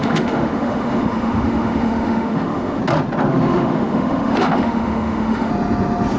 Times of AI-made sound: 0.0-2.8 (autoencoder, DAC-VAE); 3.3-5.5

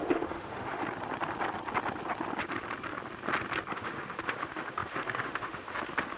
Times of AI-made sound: 0.0-0.8 (autoencoder, DAC-VAE); 3.7-6.2